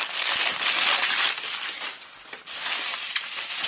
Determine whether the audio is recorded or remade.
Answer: recorded